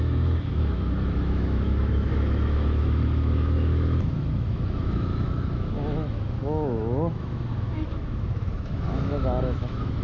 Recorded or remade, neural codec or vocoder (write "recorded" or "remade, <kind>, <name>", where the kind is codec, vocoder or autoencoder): remade, autoencoder, DAC-VAE